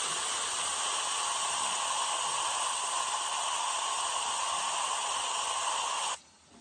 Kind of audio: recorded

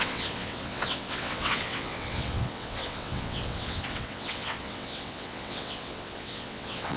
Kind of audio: remade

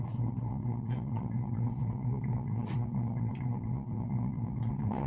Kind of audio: remade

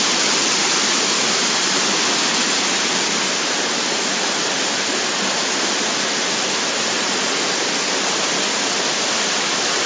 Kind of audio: recorded